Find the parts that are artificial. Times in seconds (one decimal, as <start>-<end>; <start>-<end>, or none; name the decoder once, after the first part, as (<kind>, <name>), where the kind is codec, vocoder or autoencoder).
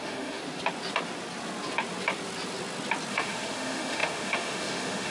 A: 0.0-0.4 (autoencoder, DAC-VAE); 3.1-5.1